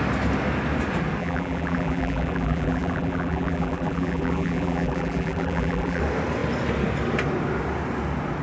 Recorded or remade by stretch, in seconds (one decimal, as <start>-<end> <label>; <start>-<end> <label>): 0.0-1.2 recorded; 1.2-6.0 remade; 6.0-8.4 recorded